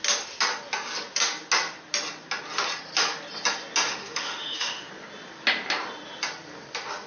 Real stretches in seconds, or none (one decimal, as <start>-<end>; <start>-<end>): 0.0-3.9; 4.9-7.1